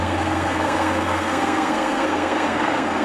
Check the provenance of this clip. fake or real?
fake